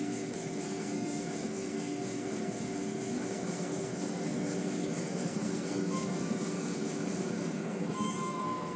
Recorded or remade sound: remade